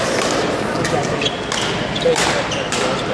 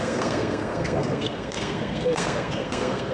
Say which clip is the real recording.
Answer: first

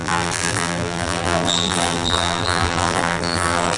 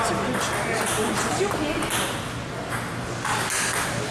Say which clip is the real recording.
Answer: second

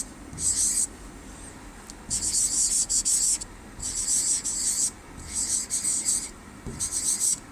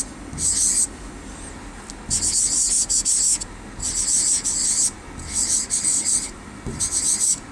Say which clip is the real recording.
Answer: second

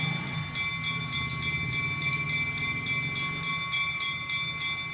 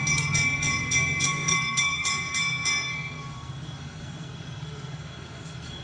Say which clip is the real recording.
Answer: first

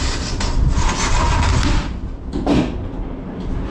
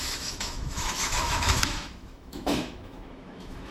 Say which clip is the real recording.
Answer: first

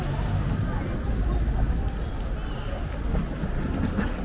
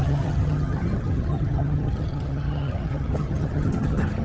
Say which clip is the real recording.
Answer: first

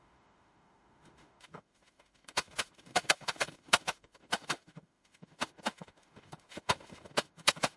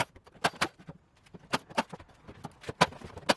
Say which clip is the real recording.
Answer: second